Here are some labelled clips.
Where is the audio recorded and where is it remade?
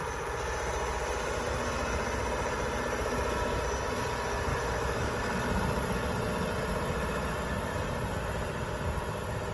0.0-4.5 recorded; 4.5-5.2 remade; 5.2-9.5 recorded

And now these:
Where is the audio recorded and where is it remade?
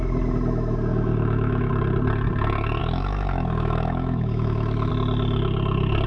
0.0-0.9 recorded; 0.9-1.7 remade; 1.7-2.8 recorded; 2.8-4.9 remade; 4.9-6.1 recorded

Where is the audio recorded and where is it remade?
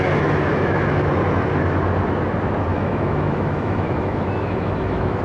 0.0-0.5 recorded; 0.5-1.1 remade; 1.1-2.7 recorded; 2.7-5.2 remade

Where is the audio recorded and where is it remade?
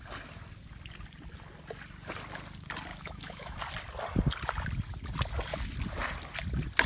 0.0-2.9 recorded; 2.9-3.6 remade; 3.6-6.9 recorded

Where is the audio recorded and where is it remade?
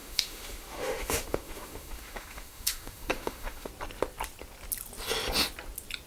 0.0-3.7 remade; 3.7-6.1 recorded